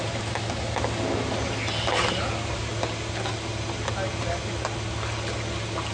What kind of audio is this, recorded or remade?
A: recorded